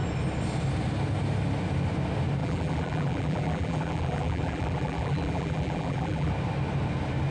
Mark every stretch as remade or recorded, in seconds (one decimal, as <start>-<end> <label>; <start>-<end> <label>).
0.0-2.4 recorded; 2.4-6.3 remade; 6.3-7.3 recorded